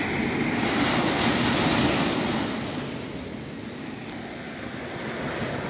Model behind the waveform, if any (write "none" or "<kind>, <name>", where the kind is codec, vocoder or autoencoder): none